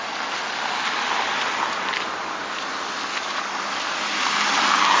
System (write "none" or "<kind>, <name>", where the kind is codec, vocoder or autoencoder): none